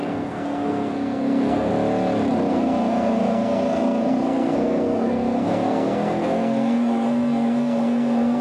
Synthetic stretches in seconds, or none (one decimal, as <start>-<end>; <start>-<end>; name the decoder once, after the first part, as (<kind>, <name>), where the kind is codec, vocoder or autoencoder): 0.0-1.7 (codec, SNAC); 2.5-8.4